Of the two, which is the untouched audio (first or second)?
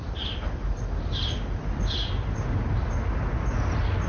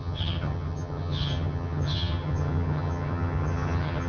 first